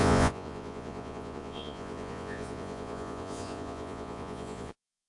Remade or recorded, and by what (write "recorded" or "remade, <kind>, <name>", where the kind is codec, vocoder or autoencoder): remade, vocoder, Vocos